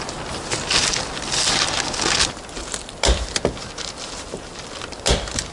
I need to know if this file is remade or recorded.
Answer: recorded